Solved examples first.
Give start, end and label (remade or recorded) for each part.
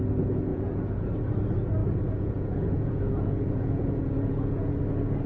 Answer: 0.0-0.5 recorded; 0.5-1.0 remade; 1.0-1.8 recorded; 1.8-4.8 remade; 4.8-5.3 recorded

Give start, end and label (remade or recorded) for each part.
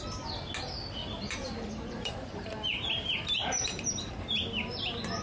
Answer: 0.0-1.0 recorded; 1.0-4.1 remade; 4.1-5.2 recorded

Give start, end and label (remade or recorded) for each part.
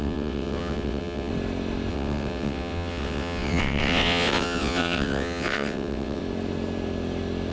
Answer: 0.0-1.3 remade; 1.3-1.9 recorded; 1.9-6.2 remade; 6.2-7.5 recorded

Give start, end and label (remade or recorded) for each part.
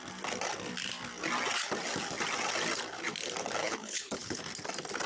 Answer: 0.0-3.6 recorded; 3.6-4.4 remade; 4.4-5.1 recorded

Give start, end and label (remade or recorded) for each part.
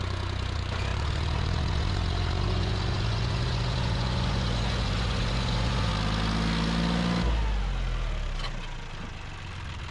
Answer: 0.0-5.9 remade; 5.9-9.9 recorded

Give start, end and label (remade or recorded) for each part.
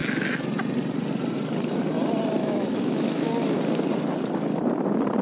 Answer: 0.0-2.4 recorded; 2.4-3.6 remade; 3.6-5.2 recorded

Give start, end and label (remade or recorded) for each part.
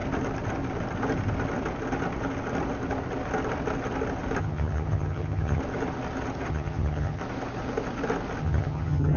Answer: 0.0-4.4 recorded; 4.4-5.6 remade; 5.6-6.5 recorded; 6.5-7.2 remade; 7.2-8.4 recorded; 8.4-9.2 remade